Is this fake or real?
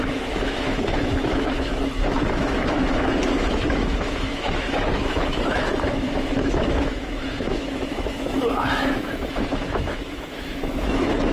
fake